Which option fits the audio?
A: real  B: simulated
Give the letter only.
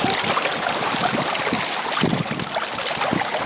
A